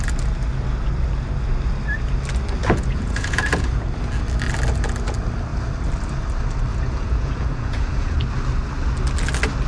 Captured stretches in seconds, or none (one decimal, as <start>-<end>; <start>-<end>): 0.0-2.6; 3.8-6.7; 8.2-9.7